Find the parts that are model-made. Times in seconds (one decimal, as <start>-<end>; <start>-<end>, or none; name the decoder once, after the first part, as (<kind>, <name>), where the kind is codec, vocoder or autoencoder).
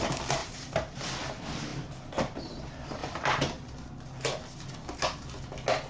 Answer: 0.4-1.0 (vocoder, BigVGAN v2); 3.0-3.7